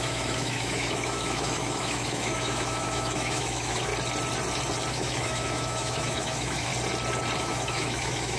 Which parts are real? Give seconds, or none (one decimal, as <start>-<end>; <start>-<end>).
3.9-4.9; 6.7-7.4